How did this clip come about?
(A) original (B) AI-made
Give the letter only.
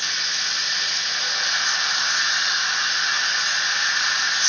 A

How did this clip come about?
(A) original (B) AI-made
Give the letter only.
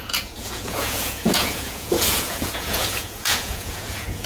B